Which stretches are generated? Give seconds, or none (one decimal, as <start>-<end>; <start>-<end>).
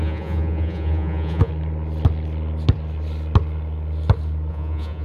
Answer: 0.0-1.5; 4.5-5.0